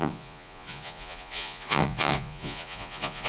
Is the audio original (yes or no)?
no